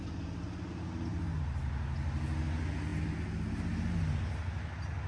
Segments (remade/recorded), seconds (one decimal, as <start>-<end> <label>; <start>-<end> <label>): 0.0-5.1 recorded